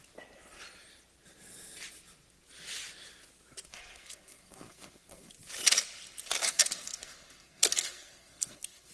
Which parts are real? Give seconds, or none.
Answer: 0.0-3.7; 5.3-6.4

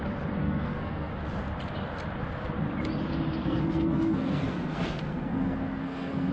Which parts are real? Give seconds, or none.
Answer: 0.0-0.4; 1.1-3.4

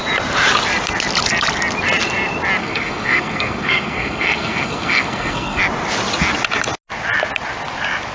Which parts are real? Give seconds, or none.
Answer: 0.0-2.6; 5.6-8.1